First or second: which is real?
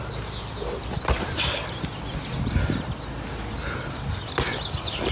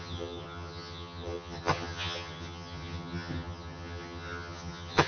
first